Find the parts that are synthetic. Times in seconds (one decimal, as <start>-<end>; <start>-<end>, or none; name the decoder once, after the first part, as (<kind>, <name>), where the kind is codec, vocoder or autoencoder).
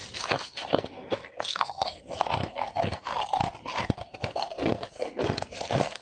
0.0-3.1 (codec, SNAC); 3.8-6.0